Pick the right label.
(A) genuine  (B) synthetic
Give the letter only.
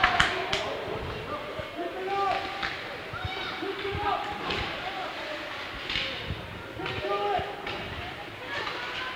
A